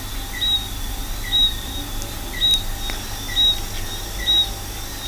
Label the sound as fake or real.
real